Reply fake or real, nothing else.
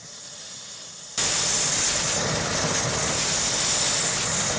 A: real